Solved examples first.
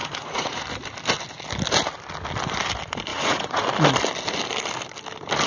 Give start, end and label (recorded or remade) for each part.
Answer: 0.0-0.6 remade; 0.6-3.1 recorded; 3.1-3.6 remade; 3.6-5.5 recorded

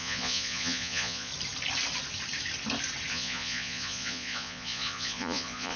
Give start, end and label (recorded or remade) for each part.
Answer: 0.0-1.3 remade; 1.3-3.1 recorded; 3.1-5.8 remade

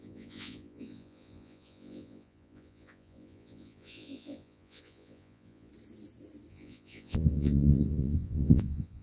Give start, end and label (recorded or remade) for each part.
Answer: 0.0-5.7 remade; 5.7-6.5 recorded; 6.5-9.0 remade

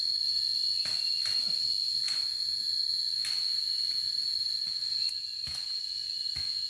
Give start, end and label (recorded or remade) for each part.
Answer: 0.0-6.7 recorded

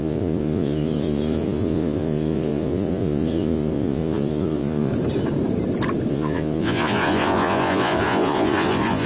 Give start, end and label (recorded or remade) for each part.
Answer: 0.0-4.9 remade; 4.9-6.1 recorded; 6.1-9.1 remade

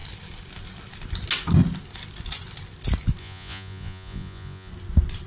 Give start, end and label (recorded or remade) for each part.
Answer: 0.0-3.2 recorded; 3.2-4.7 remade; 4.7-5.3 recorded